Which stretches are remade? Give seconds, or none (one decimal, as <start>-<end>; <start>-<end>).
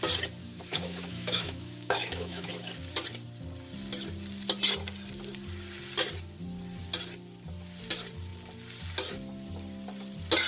0.4-2.5